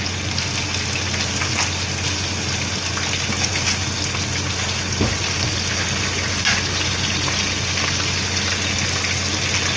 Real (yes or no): yes